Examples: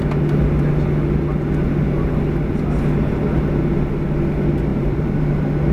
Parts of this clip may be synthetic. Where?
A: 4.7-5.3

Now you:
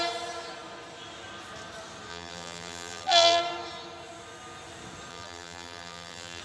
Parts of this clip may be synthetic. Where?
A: 2.1-3.4; 5.1-6.4

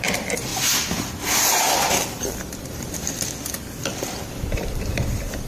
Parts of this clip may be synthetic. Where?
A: 0.0-5.5

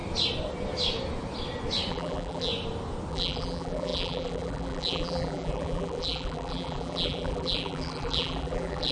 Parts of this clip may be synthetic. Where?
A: 1.9-2.5; 3.1-8.9